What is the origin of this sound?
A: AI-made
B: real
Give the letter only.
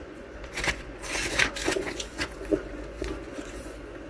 A